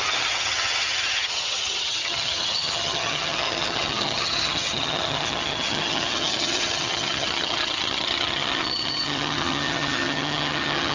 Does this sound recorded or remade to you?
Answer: remade